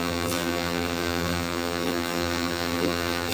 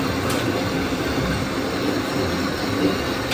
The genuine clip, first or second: second